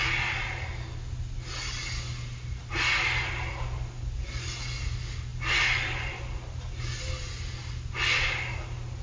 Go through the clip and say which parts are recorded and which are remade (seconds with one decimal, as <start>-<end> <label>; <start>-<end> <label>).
0.0-9.0 recorded